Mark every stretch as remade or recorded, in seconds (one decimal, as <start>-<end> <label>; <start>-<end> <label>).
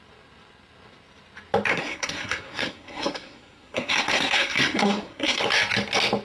0.0-1.7 recorded; 1.7-5.4 remade; 5.4-6.2 recorded